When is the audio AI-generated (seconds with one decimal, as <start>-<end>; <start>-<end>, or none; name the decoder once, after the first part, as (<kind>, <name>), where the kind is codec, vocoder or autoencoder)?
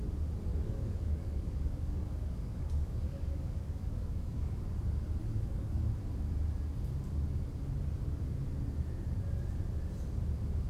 0.5-4.5 (codec, DAC); 5.2-5.8